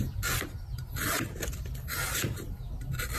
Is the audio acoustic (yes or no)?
yes